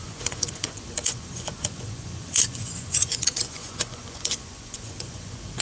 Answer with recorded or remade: remade